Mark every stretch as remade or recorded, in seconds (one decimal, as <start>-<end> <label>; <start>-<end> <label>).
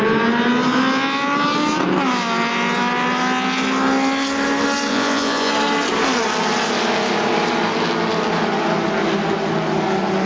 0.0-4.9 recorded; 4.9-5.5 remade; 5.5-10.3 recorded